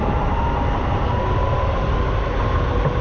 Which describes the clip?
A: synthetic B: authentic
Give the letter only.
B